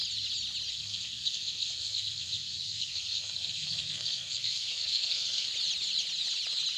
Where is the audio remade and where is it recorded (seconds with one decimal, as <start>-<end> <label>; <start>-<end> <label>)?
0.0-0.7 recorded; 0.7-5.5 remade; 5.5-6.8 recorded